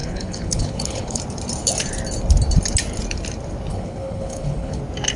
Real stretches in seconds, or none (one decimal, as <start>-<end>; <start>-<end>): 1.2-3.7; 4.8-5.2